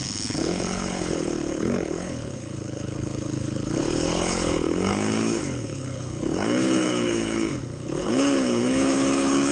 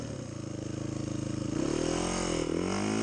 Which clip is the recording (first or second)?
second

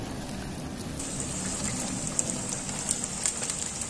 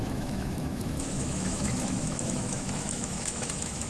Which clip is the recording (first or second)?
first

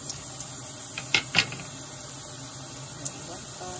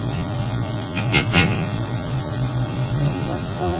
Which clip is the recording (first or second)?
first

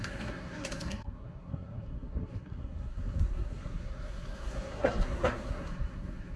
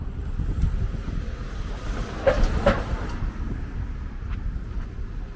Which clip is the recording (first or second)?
second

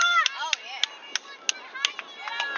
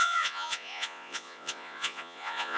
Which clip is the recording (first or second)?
first